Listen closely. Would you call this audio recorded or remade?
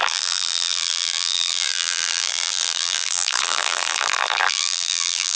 remade